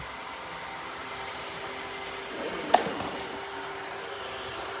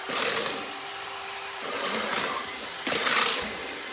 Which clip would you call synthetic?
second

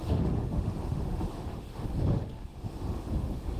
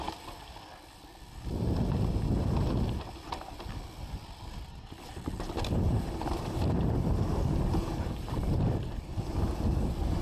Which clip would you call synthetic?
first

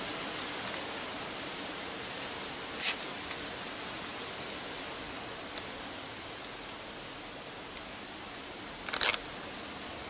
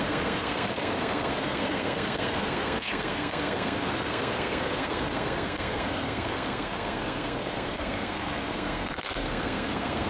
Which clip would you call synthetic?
second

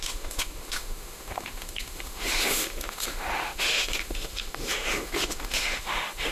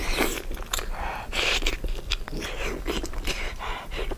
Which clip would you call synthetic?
first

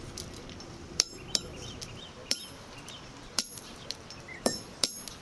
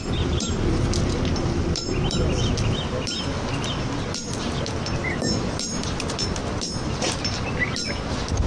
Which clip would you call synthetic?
first